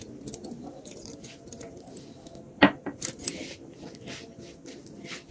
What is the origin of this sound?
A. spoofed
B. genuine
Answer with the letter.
B